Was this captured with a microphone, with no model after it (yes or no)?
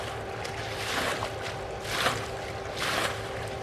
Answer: yes